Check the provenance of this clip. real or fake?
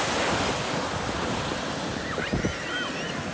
real